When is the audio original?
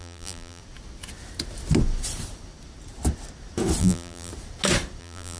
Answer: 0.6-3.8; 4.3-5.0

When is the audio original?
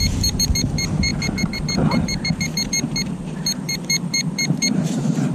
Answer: none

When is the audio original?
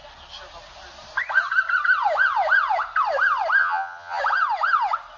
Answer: 0.0-3.6; 4.2-5.2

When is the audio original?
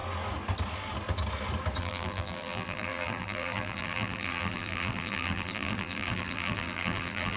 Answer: 0.0-1.8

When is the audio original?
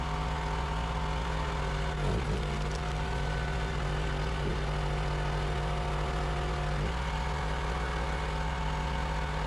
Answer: 0.0-9.5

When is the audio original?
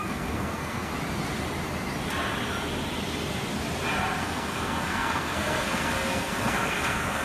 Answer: 0.9-4.2